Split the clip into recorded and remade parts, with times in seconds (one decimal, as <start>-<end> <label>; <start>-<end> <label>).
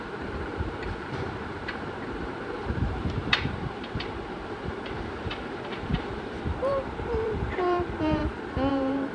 0.0-8.2 remade; 8.2-8.7 recorded; 8.7-9.1 remade